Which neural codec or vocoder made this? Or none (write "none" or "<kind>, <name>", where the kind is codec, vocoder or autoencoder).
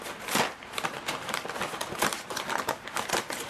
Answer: vocoder, BigVGAN v2